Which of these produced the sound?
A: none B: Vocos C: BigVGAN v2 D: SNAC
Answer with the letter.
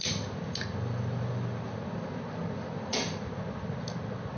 A